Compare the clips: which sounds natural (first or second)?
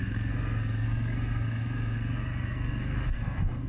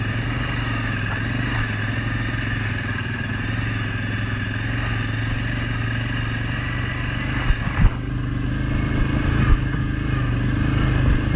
second